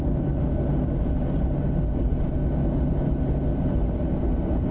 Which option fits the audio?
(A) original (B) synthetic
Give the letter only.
A